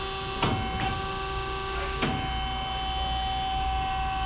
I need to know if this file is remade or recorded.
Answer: recorded